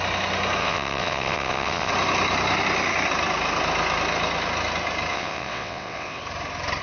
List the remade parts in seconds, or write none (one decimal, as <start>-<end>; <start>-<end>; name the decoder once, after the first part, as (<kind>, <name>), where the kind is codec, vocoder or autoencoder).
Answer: 0.6-1.9 (vocoder, WaveNeXt); 5.1-6.2